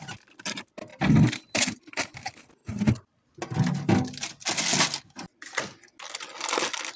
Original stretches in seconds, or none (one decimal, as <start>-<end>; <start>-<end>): 0.0-7.0